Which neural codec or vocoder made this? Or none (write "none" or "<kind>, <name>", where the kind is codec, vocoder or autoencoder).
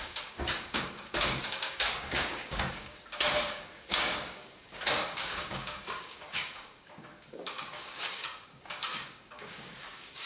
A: codec, DAC